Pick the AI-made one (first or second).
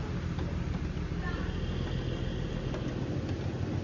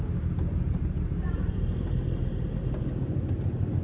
second